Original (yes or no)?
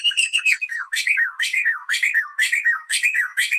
no